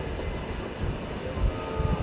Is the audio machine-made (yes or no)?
no